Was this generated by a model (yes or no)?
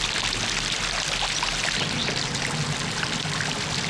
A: no